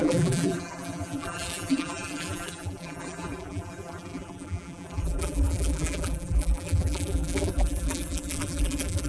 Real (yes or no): no